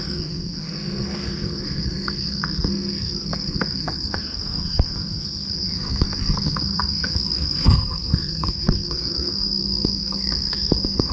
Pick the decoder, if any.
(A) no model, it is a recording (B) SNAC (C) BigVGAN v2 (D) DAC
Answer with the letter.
B